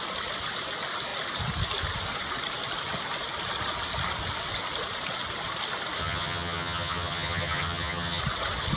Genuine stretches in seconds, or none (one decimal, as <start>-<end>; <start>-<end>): 0.0-6.0; 8.2-8.8